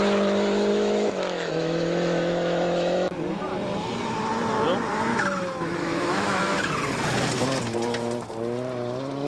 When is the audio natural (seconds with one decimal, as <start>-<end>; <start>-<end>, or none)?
0.0-0.7; 3.2-5.1; 6.7-9.3